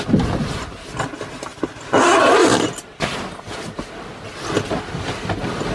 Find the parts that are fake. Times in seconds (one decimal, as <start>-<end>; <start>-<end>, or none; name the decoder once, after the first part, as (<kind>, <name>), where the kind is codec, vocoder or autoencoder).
2.4-4.0 (vocoder, BigVGAN v2)

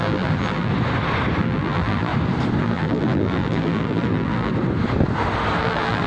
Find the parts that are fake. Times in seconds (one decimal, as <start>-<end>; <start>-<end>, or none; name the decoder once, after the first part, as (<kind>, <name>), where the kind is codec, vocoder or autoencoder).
0.0-0.7 (vocoder, BigVGAN v2); 1.4-2.1; 2.6-4.5; 5.6-6.1